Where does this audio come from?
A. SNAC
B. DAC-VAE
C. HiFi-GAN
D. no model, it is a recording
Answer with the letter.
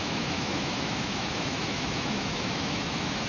B